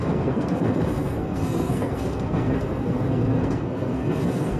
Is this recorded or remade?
remade